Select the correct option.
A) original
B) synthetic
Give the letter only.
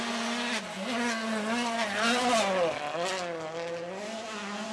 A